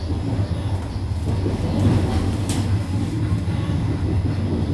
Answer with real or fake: real